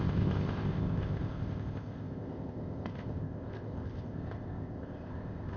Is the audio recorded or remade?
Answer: remade